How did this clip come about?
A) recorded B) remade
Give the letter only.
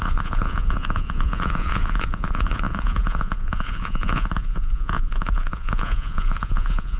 B